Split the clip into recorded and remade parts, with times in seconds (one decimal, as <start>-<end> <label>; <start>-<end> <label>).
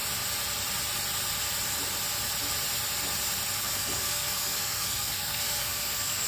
0.0-3.6 recorded; 3.6-6.3 remade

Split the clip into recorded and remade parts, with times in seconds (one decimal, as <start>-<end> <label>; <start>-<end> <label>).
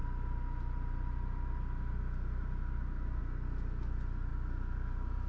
0.0-3.2 remade; 3.2-4.3 recorded; 4.3-5.3 remade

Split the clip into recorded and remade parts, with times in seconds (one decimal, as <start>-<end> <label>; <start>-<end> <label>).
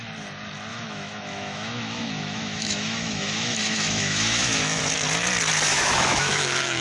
0.0-0.7 recorded; 0.7-4.8 remade; 4.8-5.7 recorded; 5.7-6.8 remade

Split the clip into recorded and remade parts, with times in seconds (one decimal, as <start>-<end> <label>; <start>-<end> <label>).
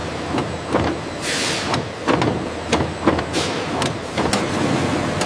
0.0-5.3 recorded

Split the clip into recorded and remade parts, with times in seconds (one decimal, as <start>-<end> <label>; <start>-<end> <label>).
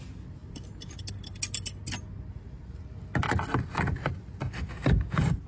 0.0-5.5 recorded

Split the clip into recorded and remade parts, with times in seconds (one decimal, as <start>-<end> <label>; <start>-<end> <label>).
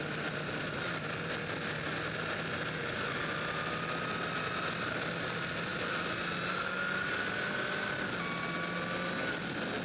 0.0-9.8 recorded